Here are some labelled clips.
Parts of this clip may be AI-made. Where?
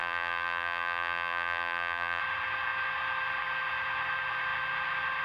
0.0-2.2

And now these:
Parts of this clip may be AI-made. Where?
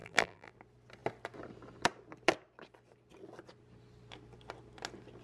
0.0-0.5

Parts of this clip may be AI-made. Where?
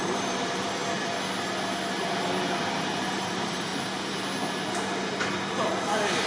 0.0-0.8; 2.6-3.7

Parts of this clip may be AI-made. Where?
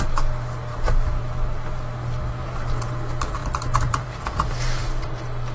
0.7-1.2; 2.4-2.9; 3.4-5.0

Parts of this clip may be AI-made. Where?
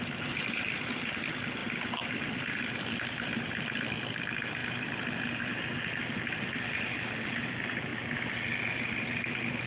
0.0-1.6; 2.2-4.6; 5.5-7.9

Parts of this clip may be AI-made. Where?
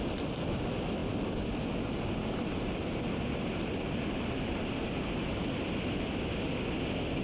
none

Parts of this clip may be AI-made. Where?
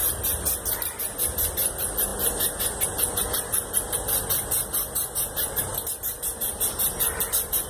none